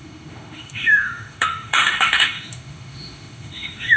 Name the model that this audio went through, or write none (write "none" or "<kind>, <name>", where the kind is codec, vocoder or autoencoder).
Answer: autoencoder, DAC-VAE